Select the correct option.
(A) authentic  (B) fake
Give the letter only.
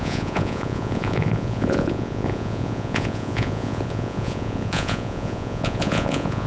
B